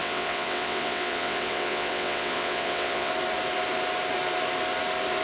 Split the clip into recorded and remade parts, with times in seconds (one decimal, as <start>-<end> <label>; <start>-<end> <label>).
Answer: 0.0-3.1 remade; 3.1-5.2 recorded